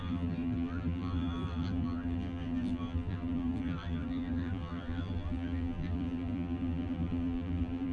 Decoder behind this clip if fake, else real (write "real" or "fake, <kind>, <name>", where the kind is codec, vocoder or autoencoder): fake, vocoder, BigVGAN v2